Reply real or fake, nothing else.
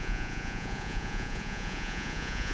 fake